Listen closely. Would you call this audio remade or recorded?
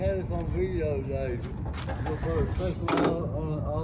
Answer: recorded